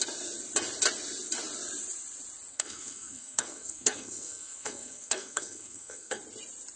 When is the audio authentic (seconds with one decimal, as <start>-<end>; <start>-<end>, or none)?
0.0-2.5; 6.2-6.8